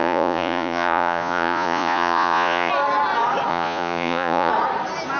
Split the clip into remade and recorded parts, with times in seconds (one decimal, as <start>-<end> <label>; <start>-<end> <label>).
0.0-2.7 remade; 2.7-3.5 recorded; 3.5-4.5 remade; 4.5-5.2 recorded